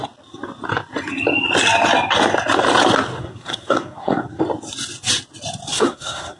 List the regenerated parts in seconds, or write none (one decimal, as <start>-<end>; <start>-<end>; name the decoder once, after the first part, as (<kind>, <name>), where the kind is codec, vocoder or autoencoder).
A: 3.2-4.4 (codec, SNAC); 5.7-6.4